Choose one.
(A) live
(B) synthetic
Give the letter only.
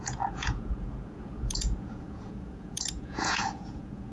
B